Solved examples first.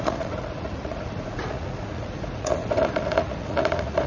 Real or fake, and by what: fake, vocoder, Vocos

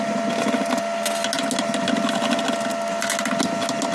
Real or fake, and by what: real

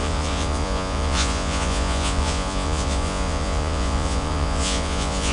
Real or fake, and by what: fake, vocoder, Vocos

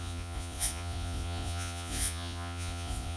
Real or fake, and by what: fake, vocoder, Vocos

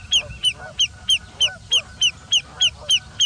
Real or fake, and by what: real